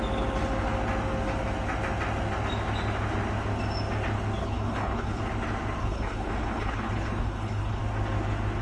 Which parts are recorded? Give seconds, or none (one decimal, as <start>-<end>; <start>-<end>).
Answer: 0.0-4.4; 5.2-5.8; 7.8-8.6